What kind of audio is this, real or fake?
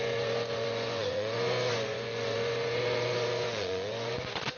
fake